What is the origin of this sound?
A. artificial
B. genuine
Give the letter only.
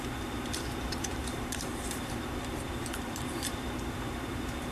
A